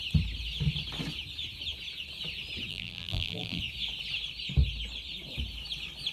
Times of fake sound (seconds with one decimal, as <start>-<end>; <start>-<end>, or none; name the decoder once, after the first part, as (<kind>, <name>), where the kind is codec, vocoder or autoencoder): 2.7-3.6 (vocoder, BigVGAN v2)